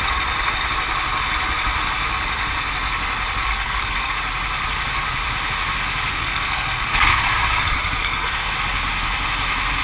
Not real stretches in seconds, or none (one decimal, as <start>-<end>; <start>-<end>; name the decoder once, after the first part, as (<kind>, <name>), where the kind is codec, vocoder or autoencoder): 3.5-4.1 (codec, SNAC); 6.1-7.3; 8.0-8.5